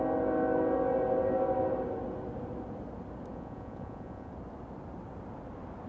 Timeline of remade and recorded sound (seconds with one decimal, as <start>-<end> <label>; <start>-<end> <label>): 0.0-3.3 recorded; 3.3-4.3 remade; 4.3-5.9 recorded